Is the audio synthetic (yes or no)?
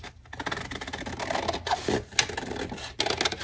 no